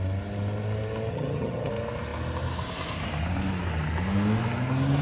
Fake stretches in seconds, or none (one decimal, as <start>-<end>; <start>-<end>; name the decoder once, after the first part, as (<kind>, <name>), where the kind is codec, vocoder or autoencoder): 1.1-1.7 (vocoder, HiFi-GAN)